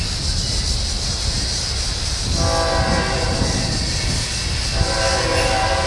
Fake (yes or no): no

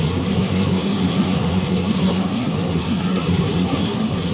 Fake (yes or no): yes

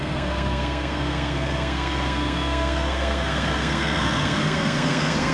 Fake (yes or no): yes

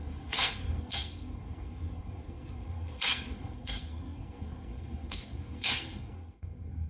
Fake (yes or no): yes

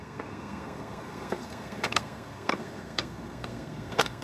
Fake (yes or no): yes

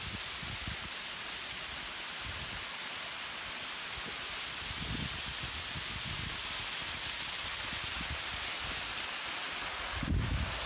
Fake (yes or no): no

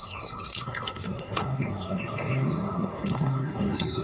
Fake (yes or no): yes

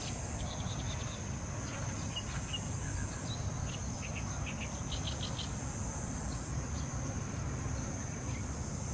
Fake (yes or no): no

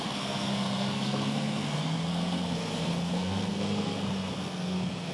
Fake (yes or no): yes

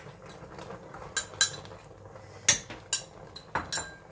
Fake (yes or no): no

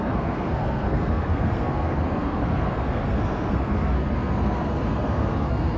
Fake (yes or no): yes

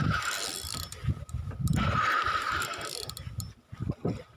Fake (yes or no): no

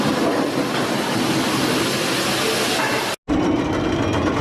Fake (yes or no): no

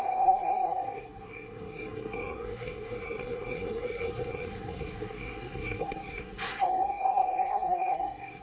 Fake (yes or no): yes